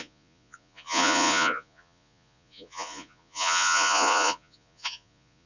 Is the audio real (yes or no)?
no